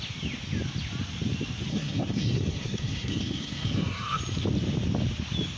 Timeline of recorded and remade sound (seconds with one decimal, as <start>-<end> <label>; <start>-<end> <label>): 0.0-1.7 recorded; 1.7-4.2 remade; 4.2-5.6 recorded